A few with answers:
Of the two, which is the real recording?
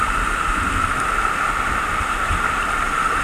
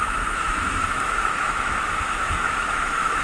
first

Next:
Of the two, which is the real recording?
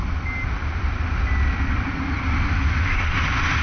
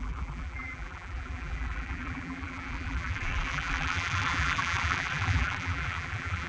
first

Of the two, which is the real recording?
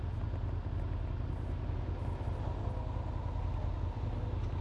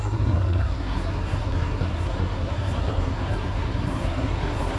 first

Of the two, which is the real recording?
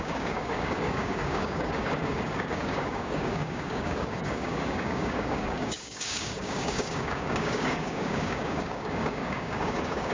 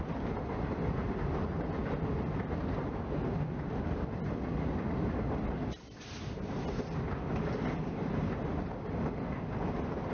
second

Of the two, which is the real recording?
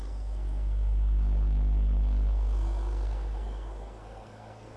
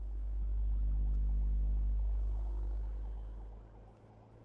second